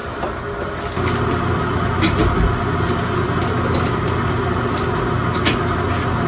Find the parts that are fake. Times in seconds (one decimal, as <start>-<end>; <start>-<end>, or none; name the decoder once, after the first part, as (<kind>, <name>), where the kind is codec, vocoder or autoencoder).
none